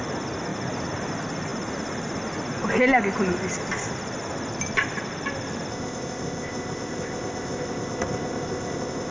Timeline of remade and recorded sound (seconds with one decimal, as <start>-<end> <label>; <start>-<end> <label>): 0.0-5.7 recorded; 5.7-9.1 remade